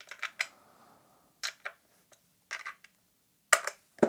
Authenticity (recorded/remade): recorded